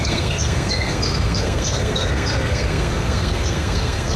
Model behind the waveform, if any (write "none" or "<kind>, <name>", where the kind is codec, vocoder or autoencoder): codec, SNAC